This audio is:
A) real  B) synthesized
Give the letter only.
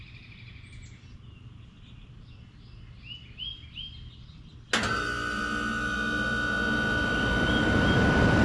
A